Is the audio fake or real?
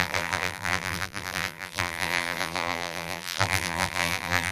fake